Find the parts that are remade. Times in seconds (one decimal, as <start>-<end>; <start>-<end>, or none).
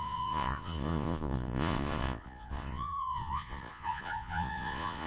0.0-5.1